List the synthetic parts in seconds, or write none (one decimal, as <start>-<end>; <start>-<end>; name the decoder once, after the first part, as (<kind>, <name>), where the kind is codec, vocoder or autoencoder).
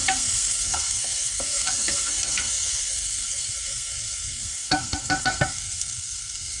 0.0-6.6 (codec, SNAC)